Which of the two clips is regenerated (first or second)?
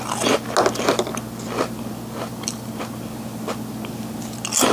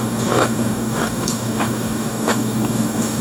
second